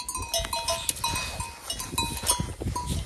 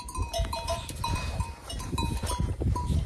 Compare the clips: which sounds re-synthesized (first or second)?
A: second